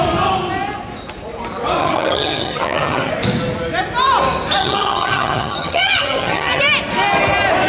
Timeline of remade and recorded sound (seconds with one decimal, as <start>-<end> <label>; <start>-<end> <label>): 0.0-1.8 recorded; 1.8-3.1 remade; 3.1-4.6 recorded; 4.6-6.6 remade; 6.6-7.7 recorded